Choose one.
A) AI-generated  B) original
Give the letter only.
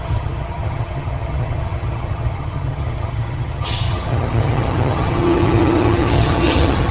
A